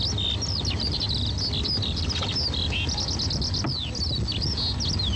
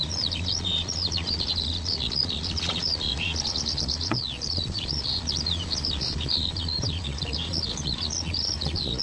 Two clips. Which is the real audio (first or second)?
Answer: first